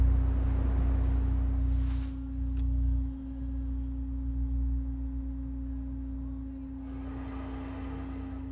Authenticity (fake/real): real